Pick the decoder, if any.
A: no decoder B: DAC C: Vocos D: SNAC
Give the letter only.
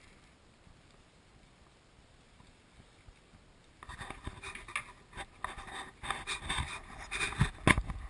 A